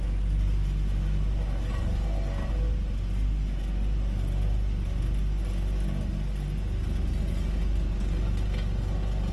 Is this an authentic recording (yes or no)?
yes